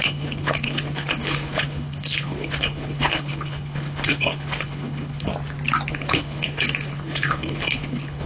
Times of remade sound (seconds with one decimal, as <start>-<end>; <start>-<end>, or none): 0.0-5.3; 5.9-8.3

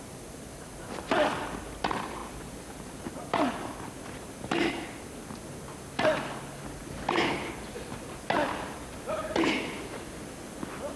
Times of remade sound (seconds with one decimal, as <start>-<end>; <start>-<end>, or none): none

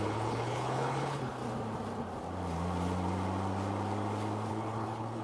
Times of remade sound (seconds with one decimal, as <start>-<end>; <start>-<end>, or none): 0.0-1.4; 4.5-5.2